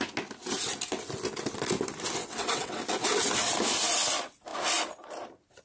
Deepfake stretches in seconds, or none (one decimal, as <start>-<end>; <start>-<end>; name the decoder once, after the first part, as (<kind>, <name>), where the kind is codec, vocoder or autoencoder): 2.2-2.8 (vocoder, WaveNeXt)